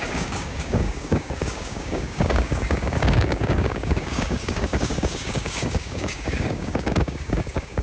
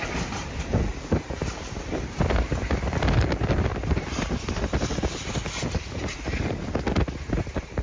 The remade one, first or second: first